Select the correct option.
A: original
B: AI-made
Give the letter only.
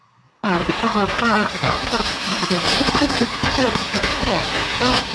B